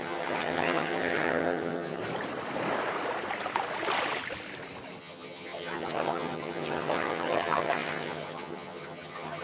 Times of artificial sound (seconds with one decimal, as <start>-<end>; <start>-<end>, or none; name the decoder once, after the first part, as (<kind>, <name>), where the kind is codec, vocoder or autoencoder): 0.0-2.0 (vocoder, HiFi-GAN); 5.0-9.4